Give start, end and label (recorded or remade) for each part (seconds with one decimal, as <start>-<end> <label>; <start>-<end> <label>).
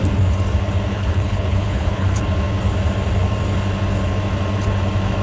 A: 0.0-0.9 recorded; 0.9-2.2 remade; 2.2-5.2 recorded